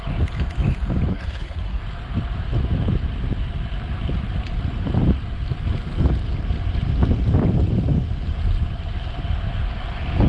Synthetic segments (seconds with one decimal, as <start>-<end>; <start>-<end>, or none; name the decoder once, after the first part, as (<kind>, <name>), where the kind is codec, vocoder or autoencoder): 1.1-1.8 (codec, SNAC)